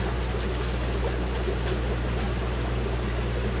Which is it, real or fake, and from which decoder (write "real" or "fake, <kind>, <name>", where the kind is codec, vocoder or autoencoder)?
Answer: real